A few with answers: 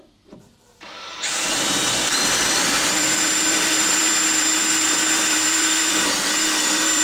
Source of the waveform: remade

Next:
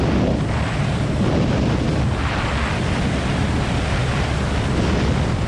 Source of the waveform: recorded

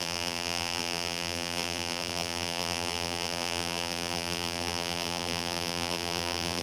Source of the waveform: remade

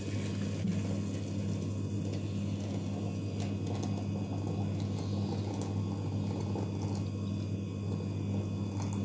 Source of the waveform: recorded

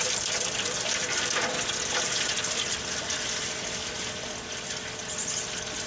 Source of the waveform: recorded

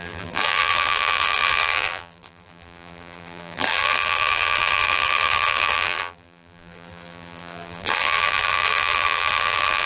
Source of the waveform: remade